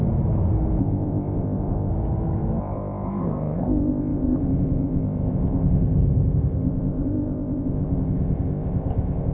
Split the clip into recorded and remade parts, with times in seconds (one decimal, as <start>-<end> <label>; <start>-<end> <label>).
0.0-0.8 recorded; 0.8-1.9 remade; 1.9-2.6 recorded; 2.6-9.3 remade